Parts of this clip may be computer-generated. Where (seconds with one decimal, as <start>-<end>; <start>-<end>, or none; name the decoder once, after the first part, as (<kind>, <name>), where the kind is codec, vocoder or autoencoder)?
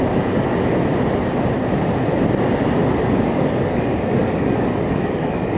2.8-5.6 (codec, DAC)